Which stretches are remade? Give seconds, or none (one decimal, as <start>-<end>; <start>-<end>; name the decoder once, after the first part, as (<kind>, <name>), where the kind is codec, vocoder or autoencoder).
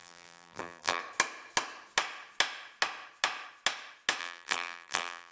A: 0.0-1.0 (vocoder, BigVGAN v2); 4.2-5.3